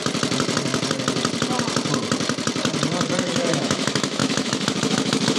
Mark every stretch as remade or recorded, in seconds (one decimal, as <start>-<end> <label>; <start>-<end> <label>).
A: 0.0-3.2 recorded; 3.2-5.4 remade